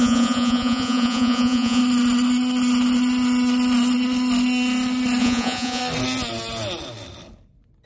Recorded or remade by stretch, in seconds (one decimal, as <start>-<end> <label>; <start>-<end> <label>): 0.0-1.8 remade; 1.8-5.2 recorded; 5.2-5.8 remade; 5.8-7.9 recorded